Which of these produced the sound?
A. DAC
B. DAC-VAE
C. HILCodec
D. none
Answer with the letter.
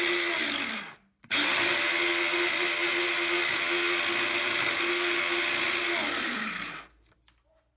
D